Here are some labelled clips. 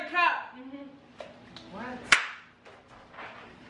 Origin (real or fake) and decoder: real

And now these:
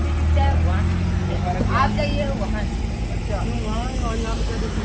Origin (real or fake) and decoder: real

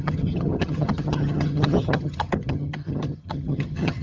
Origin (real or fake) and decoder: fake, vocoder, HiFi-GAN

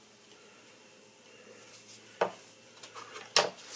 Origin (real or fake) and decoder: real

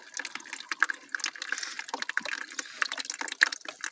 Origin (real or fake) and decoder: real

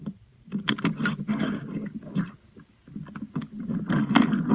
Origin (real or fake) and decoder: real